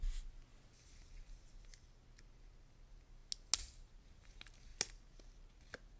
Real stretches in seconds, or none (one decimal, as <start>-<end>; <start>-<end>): 0.0-6.0